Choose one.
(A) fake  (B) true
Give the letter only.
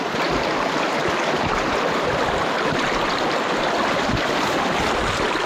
B